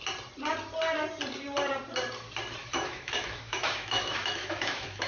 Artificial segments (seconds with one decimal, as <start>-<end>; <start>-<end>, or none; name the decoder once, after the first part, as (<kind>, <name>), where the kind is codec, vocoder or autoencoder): 2.6-5.1 (autoencoder, DAC-VAE)